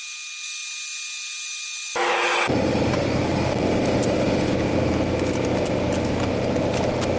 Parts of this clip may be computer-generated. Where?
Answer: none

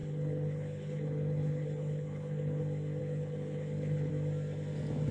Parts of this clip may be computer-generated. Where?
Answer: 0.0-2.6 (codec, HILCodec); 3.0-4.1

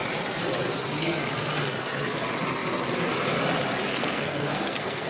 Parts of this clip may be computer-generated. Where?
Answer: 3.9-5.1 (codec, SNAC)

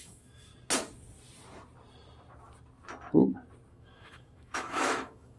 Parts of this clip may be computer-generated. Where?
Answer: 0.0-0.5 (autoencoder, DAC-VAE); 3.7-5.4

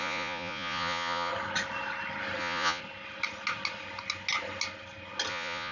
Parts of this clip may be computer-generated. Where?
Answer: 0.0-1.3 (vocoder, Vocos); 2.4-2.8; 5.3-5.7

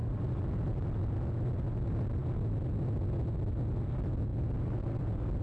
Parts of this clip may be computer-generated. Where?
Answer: none

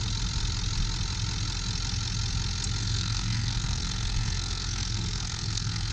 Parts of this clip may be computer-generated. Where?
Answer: 2.8-5.9 (codec, SNAC)

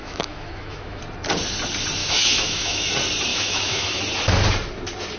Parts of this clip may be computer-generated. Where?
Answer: 0.0-1.0 (autoencoder, DAC-VAE); 2.0-2.9; 3.3-4.0